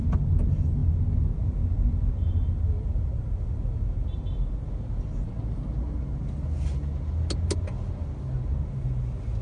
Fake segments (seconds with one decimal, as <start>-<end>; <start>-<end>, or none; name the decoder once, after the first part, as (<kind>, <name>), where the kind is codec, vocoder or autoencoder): none